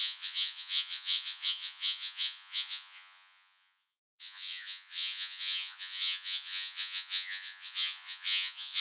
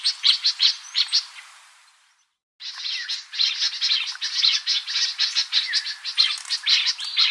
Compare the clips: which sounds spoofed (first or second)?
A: first